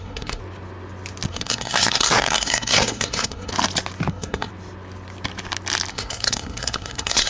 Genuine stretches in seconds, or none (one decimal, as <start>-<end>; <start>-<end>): 0.4-1.3; 3.5-4.1; 4.5-5.9